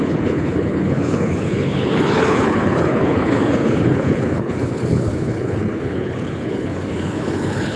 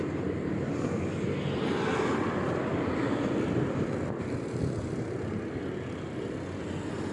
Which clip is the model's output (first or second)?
first